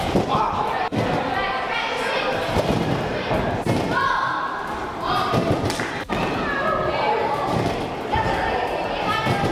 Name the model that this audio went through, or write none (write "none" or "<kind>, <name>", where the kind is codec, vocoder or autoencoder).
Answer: none